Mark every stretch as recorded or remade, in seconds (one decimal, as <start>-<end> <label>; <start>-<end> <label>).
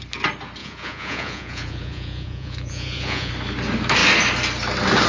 0.0-0.6 recorded; 0.6-3.3 remade; 3.3-5.1 recorded